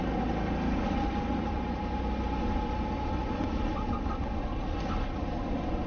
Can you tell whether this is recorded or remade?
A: recorded